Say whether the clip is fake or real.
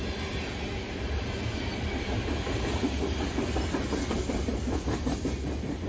real